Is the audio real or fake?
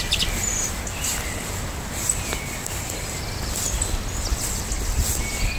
real